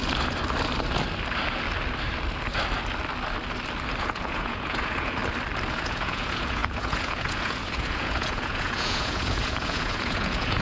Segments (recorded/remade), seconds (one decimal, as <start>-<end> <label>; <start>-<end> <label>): 0.0-4.0 recorded; 4.0-5.2 remade; 5.2-5.7 recorded; 5.7-10.6 remade